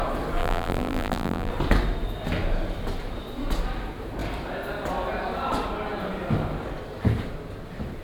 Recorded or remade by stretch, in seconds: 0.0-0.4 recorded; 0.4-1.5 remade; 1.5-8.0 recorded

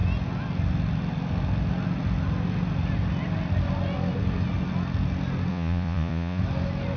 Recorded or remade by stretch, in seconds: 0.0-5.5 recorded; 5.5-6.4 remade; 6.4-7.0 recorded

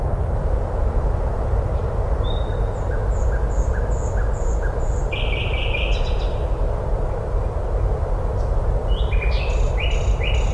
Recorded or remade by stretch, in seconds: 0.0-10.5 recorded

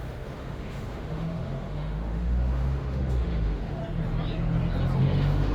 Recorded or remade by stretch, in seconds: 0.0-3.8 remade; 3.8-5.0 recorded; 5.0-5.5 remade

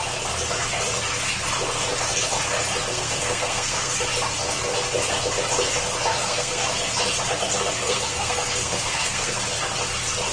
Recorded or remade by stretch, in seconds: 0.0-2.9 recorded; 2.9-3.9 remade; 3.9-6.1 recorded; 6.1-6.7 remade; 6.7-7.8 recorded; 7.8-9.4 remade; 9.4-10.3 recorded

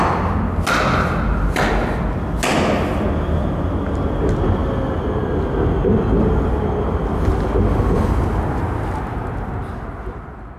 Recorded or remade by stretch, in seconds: 0.0-10.6 recorded

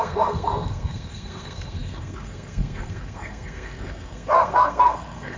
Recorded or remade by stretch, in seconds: 0.0-5.4 remade